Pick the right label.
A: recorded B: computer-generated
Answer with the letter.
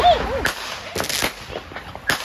A